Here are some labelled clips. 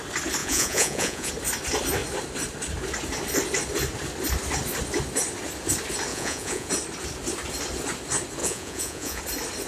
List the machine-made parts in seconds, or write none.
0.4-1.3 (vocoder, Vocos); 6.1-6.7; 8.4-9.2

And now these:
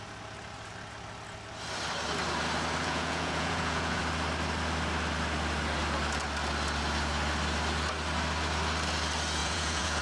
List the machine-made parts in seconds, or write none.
2.8-4.0 (vocoder, Vocos); 9.4-10.0

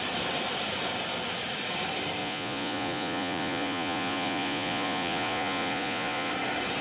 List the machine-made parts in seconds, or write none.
2.2-6.3 (vocoder, Vocos)

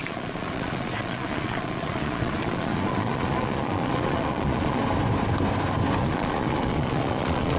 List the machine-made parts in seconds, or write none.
0.0-4.8 (vocoder, Vocos); 6.0-7.6

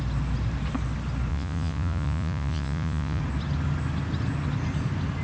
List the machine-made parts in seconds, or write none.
1.3-3.2 (vocoder, Vocos)

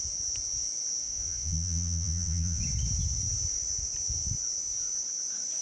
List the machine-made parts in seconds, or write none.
1.0-2.6 (vocoder, Vocos)